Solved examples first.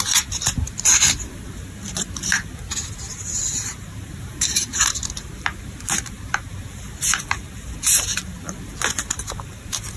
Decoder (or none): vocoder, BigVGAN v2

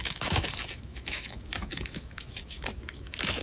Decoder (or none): autoencoder, DAC-VAE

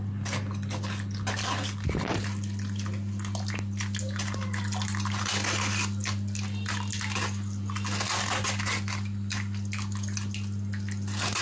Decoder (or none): none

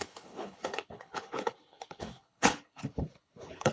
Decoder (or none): codec, HILCodec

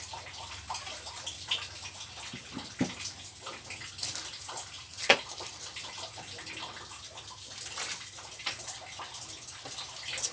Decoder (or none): none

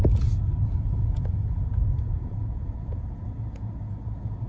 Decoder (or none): vocoder, Vocos